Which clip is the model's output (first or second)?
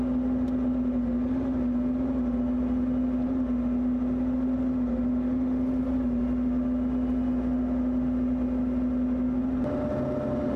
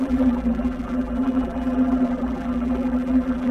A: second